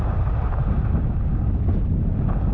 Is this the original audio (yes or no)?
yes